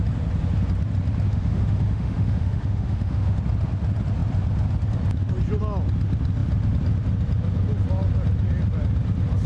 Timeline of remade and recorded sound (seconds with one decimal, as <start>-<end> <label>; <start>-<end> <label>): 0.0-1.3 recorded; 1.3-3.4 remade; 3.4-9.5 recorded

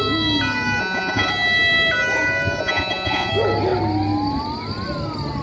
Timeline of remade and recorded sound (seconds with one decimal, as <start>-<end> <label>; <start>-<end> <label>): 0.0-0.8 recorded; 0.8-1.3 remade; 1.3-2.6 recorded; 2.6-3.3 remade; 3.3-5.4 recorded

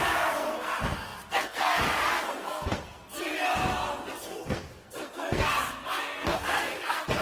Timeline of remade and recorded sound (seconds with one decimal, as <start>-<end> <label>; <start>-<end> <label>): 0.0-3.3 remade; 3.3-4.2 recorded; 4.2-7.2 remade

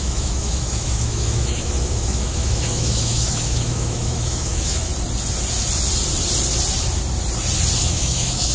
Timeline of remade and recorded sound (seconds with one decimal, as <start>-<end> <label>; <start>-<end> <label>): 0.0-4.9 remade; 4.9-7.8 recorded; 7.8-8.5 remade